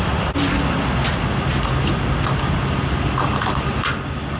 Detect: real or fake real